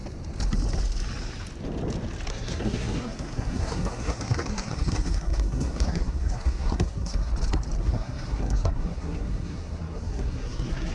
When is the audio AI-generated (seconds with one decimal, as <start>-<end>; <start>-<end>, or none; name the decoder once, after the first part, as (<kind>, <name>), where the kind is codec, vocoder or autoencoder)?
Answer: 2.3-7.3 (codec, SNAC); 7.8-10.9